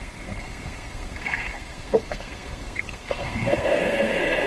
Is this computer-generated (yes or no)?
yes